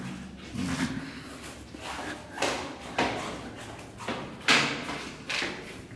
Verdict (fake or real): real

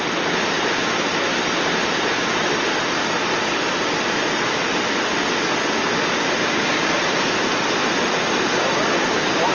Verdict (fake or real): real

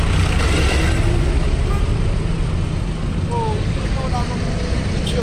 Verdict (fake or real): real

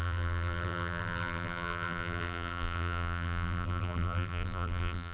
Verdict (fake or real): fake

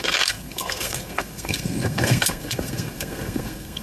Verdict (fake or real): fake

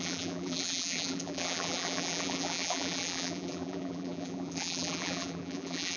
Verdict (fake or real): fake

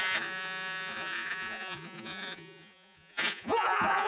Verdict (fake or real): fake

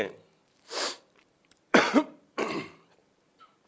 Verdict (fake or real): fake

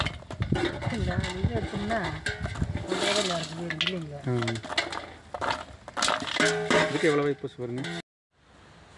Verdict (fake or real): real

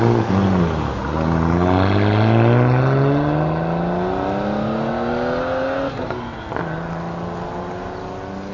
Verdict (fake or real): real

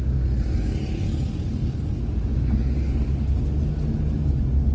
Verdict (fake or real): real